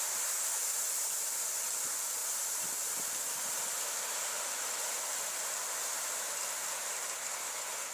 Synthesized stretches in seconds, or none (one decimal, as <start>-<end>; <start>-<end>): none